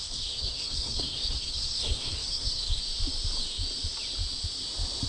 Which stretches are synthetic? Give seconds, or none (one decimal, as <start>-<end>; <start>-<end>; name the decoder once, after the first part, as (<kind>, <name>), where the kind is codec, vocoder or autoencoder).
0.0-2.8 (codec, SNAC)